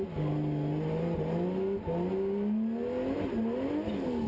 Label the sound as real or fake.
real